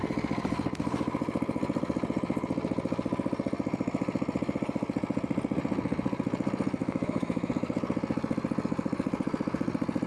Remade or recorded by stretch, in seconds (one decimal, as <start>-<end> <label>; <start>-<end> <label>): 0.0-6.8 recorded; 6.8-7.5 remade; 7.5-10.1 recorded